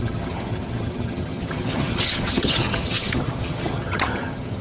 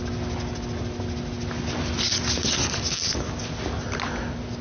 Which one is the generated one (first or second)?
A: first